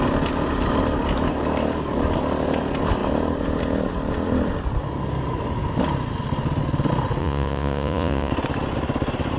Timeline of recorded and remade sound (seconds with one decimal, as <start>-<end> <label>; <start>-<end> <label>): 0.0-7.2 recorded; 7.2-8.3 remade; 8.3-9.4 recorded